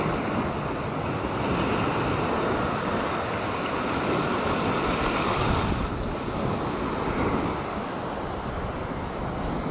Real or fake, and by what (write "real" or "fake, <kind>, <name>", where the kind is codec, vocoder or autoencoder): real